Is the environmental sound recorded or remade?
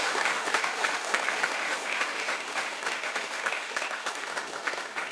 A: remade